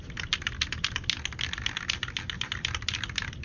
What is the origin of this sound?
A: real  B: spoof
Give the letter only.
A